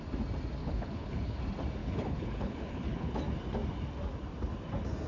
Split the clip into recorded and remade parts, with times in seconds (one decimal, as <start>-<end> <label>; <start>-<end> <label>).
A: 0.0-0.6 recorded; 0.6-1.4 remade; 1.4-1.8 recorded; 1.8-3.2 remade; 3.2-5.1 recorded